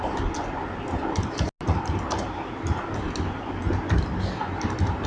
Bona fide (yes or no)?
yes